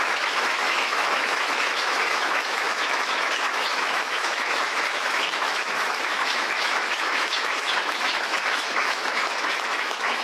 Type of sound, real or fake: fake